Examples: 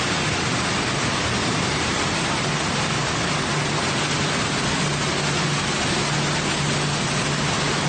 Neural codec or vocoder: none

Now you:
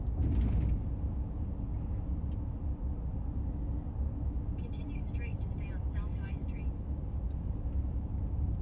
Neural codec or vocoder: none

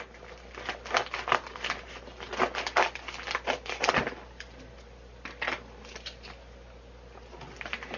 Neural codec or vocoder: none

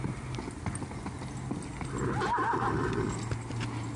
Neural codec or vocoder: none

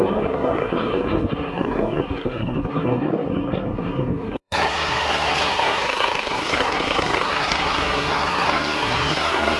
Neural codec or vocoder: codec, SNAC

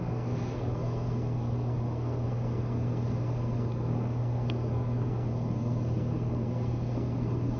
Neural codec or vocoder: codec, SNAC